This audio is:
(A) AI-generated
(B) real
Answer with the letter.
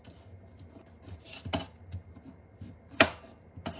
B